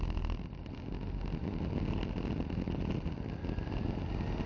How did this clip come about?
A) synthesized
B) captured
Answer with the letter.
B